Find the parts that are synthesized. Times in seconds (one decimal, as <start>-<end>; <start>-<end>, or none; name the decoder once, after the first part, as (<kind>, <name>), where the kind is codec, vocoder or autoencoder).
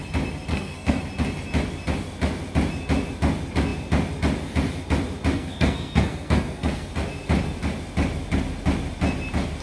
0.5-1.0 (codec, SNAC); 5.3-6.9